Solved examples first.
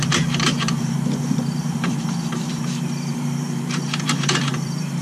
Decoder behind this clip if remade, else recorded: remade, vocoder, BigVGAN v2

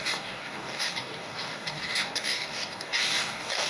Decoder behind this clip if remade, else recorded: remade, codec, DAC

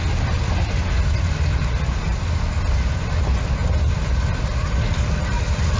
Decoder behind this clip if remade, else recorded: recorded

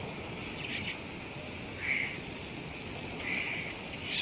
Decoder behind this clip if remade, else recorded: recorded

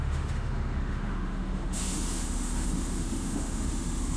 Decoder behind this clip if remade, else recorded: remade, autoencoder, DAC-VAE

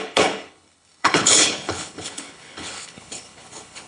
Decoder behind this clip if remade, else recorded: remade, codec, HILCodec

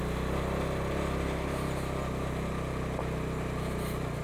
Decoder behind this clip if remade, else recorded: recorded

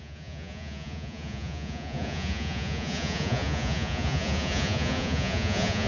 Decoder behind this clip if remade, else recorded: remade, vocoder, Vocos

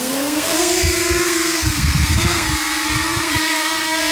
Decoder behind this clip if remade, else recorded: remade, codec, SNAC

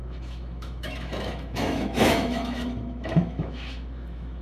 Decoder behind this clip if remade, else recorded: remade, autoencoder, DAC-VAE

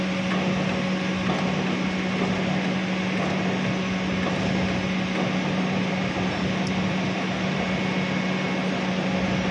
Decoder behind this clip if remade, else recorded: recorded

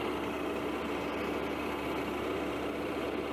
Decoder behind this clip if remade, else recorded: recorded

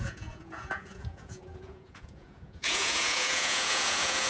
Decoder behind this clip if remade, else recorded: remade, vocoder, Vocos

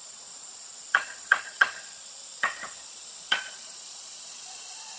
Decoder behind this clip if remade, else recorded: remade, vocoder, Vocos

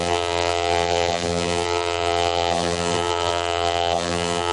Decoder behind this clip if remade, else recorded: remade, vocoder, BigVGAN v2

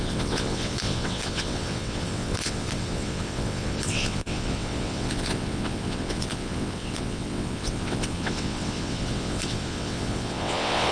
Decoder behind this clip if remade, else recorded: remade, vocoder, WaveNeXt